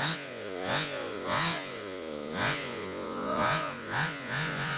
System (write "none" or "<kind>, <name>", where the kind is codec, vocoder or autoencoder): vocoder, Vocos